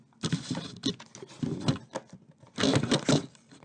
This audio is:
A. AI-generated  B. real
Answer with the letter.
B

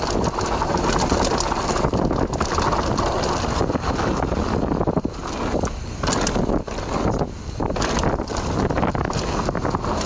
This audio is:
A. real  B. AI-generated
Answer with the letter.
A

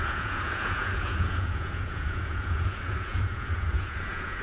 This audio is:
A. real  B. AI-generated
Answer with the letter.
B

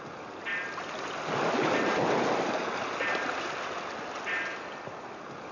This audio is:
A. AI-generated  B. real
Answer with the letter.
B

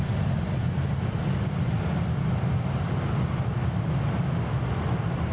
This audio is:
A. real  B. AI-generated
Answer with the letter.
A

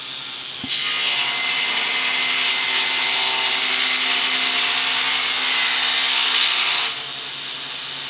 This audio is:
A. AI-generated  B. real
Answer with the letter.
B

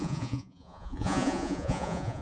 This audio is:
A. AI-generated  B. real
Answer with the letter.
A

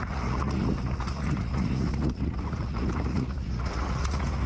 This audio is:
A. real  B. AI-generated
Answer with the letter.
B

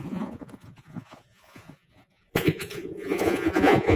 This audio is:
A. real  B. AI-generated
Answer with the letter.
B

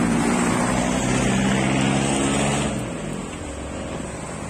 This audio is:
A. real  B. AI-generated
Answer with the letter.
A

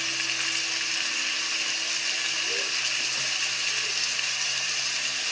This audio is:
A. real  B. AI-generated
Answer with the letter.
A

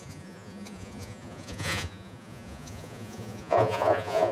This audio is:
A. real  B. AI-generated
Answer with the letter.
B